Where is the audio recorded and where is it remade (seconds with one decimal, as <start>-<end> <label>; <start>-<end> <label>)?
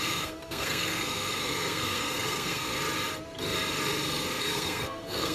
0.0-2.7 remade; 2.7-4.4 recorded; 4.4-5.3 remade